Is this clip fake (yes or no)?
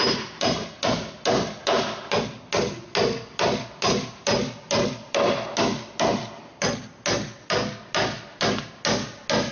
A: no